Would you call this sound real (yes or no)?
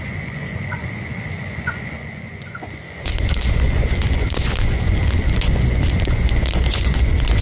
no